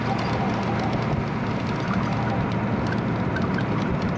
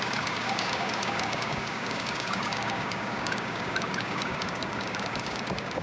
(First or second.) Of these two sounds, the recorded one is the first